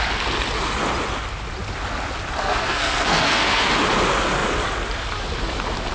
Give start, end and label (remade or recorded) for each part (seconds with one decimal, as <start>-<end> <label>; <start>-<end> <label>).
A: 0.0-2.4 recorded; 2.4-3.7 remade; 3.7-5.9 recorded